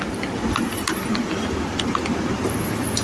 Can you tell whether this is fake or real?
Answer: real